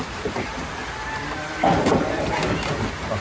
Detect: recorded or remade recorded